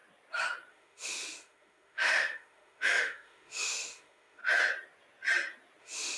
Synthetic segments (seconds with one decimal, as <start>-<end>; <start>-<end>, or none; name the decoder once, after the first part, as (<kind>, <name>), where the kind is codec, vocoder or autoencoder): 0.7-4.4 (autoencoder, DAC-VAE); 5.8-6.2